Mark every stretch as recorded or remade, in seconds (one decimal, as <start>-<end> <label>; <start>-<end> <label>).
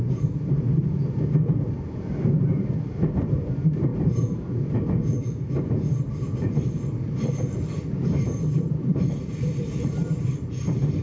0.0-11.0 remade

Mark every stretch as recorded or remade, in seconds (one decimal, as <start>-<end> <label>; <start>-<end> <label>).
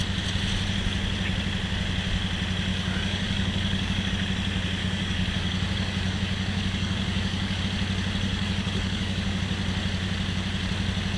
0.0-2.7 recorded; 2.7-4.1 remade; 4.1-4.8 recorded; 4.8-7.6 remade; 7.6-8.3 recorded; 8.3-9.4 remade; 9.4-11.2 recorded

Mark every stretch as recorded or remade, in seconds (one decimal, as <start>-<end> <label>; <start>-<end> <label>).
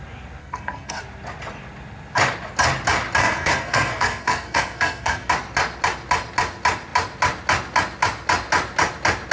0.0-0.4 recorded; 0.4-1.0 remade; 1.0-3.2 recorded; 3.2-5.3 remade; 5.3-9.3 recorded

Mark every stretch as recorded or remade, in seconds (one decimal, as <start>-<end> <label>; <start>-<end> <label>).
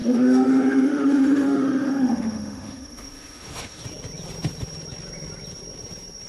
0.0-3.8 remade; 3.8-6.3 recorded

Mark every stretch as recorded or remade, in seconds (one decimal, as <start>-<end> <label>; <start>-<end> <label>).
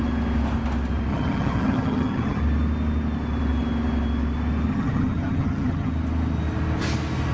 0.0-1.1 recorded; 1.1-2.4 remade; 2.4-4.7 recorded; 4.7-5.9 remade; 5.9-7.3 recorded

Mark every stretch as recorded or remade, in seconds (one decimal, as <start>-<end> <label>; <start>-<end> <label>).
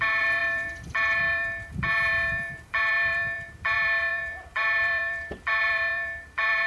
0.0-6.7 remade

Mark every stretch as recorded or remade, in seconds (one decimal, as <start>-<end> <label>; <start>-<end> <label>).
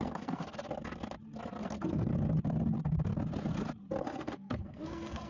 0.0-0.6 remade; 0.6-1.6 recorded; 1.6-2.1 remade; 2.1-4.0 recorded; 4.0-5.3 remade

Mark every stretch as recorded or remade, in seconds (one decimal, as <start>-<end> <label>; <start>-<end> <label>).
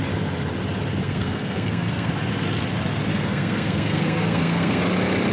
0.0-1.0 recorded; 1.0-2.1 remade; 2.1-3.1 recorded; 3.1-4.8 remade; 4.8-5.3 recorded